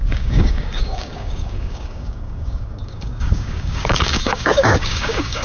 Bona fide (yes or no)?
no